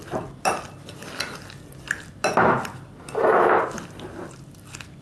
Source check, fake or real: real